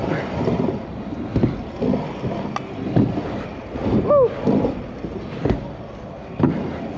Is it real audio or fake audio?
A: real